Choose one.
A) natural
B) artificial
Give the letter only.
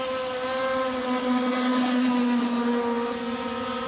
A